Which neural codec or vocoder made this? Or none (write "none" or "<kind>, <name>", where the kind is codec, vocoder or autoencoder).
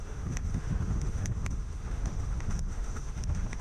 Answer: autoencoder, DAC-VAE